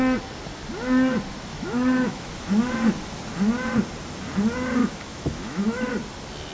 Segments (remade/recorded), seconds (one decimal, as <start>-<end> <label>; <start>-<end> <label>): 0.0-1.5 recorded; 1.5-2.3 remade; 2.3-4.8 recorded; 4.8-5.9 remade; 5.9-6.5 recorded